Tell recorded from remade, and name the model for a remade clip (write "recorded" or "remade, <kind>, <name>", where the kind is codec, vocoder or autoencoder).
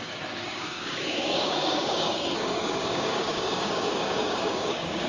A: remade, codec, DAC